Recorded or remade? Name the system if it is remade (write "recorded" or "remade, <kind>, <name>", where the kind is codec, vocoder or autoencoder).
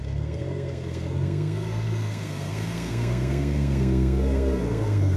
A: remade, codec, SNAC